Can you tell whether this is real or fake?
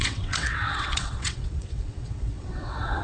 fake